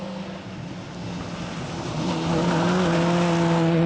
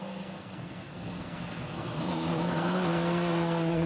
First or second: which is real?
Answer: first